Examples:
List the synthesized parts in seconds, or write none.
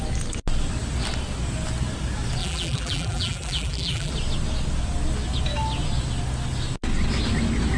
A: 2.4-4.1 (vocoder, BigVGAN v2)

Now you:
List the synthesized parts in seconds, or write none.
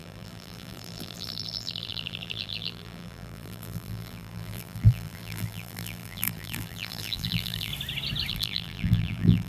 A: 0.0-7.7 (vocoder, BigVGAN v2); 8.3-9.5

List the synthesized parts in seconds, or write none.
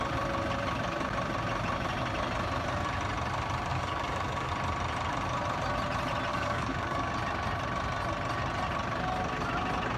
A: 3.7-4.5 (codec, DAC); 6.3-7.1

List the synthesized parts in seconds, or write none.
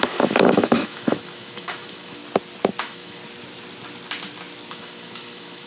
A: 0.0-2.2 (autoencoder, DAC-VAE); 2.8-3.2; 4.7-5.7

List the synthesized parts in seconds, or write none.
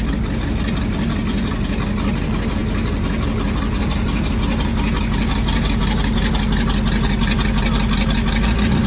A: none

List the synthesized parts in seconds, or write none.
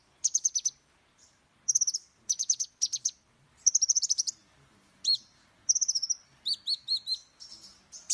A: 2.8-5.6 (vocoder, BigVGAN v2)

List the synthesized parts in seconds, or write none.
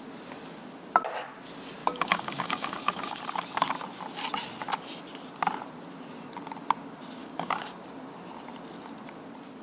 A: 1.8-3.2 (codec, DAC); 7.2-7.7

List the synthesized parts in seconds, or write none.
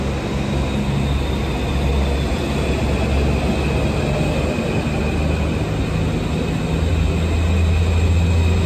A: none